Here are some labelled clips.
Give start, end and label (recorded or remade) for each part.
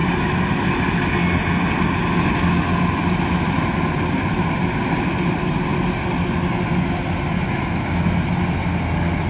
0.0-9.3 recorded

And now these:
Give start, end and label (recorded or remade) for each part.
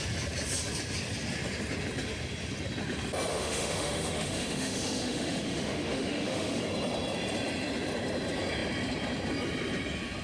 0.0-3.3 recorded; 3.3-6.6 remade; 6.6-10.2 recorded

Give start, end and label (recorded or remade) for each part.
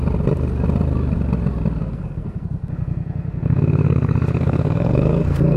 0.0-1.8 recorded; 1.8-5.6 remade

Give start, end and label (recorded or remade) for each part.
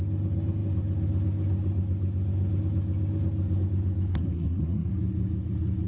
0.0-4.1 recorded; 4.1-4.9 remade; 4.9-5.9 recorded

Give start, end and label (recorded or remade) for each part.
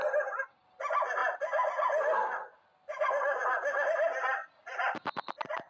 0.0-5.7 recorded